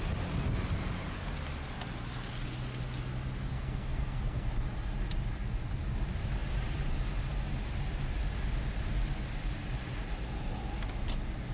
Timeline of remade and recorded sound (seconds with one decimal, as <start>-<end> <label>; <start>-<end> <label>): 0.0-3.5 recorded; 3.5-4.5 remade; 4.5-11.5 recorded